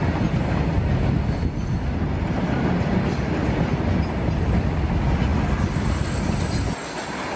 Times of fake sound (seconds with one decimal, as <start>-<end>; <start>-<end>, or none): none